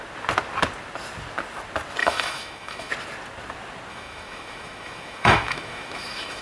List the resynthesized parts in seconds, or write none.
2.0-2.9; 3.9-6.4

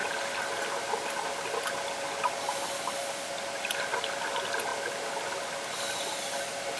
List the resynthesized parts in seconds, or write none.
none